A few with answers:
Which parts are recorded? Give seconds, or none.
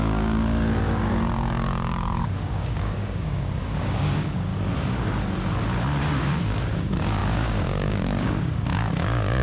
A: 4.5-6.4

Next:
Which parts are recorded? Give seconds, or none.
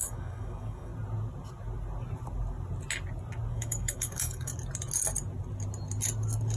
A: 0.9-3.5; 4.5-6.6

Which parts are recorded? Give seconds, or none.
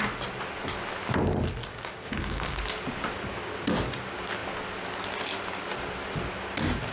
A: 0.0-1.7; 2.6-6.9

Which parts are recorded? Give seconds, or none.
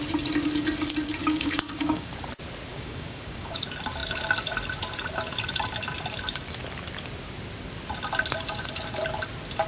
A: 0.0-1.2; 2.1-2.7; 3.6-9.7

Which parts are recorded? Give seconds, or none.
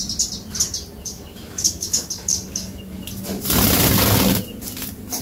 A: 0.0-1.0; 3.0-5.2